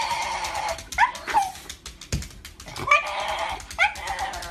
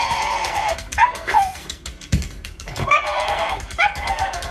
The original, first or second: first